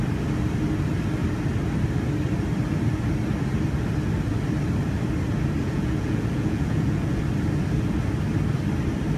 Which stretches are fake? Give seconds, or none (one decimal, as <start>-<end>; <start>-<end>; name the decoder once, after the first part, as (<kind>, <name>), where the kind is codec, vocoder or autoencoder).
5.6-7.2 (vocoder, Vocos)